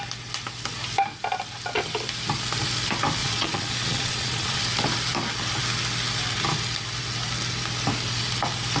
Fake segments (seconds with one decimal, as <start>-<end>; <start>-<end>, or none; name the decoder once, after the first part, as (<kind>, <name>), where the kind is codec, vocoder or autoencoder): 3.2-4.6 (vocoder, Vocos)